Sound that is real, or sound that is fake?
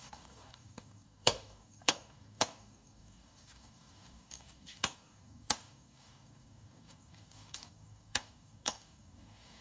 fake